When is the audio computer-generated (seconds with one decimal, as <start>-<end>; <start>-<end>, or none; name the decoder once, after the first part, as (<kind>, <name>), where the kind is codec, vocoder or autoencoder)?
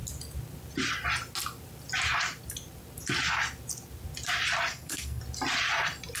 4.7-5.2 (codec, SNAC)